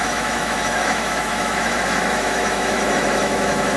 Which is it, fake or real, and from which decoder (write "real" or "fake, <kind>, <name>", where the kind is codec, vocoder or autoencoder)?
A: fake, autoencoder, DAC-VAE